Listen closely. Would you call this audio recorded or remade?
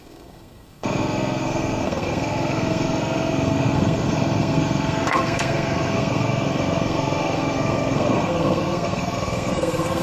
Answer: remade